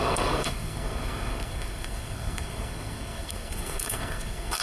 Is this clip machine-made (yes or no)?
yes